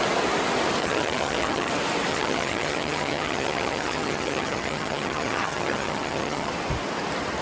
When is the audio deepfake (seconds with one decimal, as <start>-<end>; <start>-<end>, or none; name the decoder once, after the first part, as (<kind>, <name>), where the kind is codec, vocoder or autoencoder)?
0.8-1.7 (vocoder, HiFi-GAN); 2.1-6.5